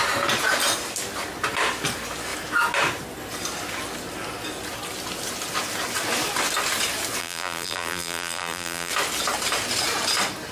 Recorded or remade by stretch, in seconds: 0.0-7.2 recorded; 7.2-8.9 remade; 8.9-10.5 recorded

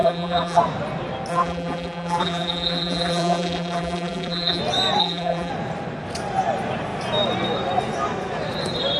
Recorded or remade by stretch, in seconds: 0.0-0.6 remade; 0.6-1.3 recorded; 1.3-4.6 remade; 4.6-5.0 recorded; 5.0-5.5 remade; 5.5-9.0 recorded

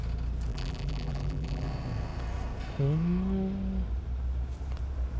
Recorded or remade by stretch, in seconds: 0.0-0.5 recorded; 0.5-1.7 remade; 1.7-5.2 recorded

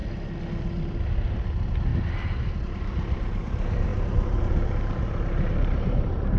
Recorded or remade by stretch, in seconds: 0.0-1.4 recorded; 1.4-1.9 remade; 1.9-2.6 recorded; 2.6-6.4 remade

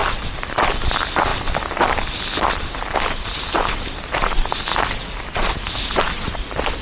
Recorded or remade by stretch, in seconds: 0.0-6.8 recorded

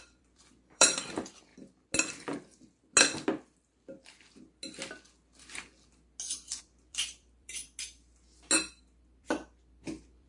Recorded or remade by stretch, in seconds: 0.0-1.5 remade; 1.5-6.6 recorded; 6.6-7.6 remade; 7.6-8.7 recorded; 8.7-10.3 remade

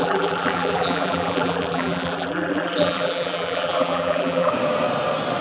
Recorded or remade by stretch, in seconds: 0.0-4.5 remade; 4.5-5.4 recorded